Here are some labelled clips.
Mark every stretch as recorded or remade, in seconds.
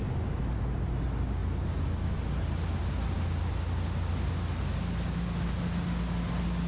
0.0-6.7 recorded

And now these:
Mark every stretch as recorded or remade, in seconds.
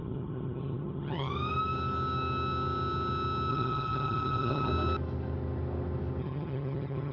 0.0-1.3 remade; 1.3-3.5 recorded; 3.5-4.7 remade; 4.7-6.2 recorded; 6.2-7.1 remade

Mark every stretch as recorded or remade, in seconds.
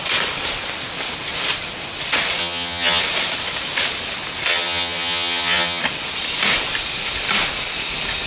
0.0-2.4 recorded; 2.4-3.0 remade; 3.0-4.5 recorded; 4.5-5.8 remade; 5.8-8.3 recorded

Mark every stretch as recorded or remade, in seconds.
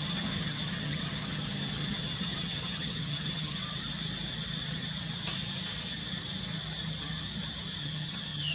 0.0-3.6 remade; 3.6-7.8 recorded; 7.8-8.5 remade